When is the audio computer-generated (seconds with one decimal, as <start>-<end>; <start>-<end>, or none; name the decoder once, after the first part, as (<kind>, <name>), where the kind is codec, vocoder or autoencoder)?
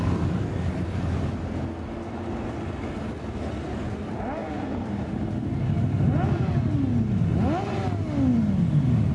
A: 4.4-5.1 (vocoder, BigVGAN v2)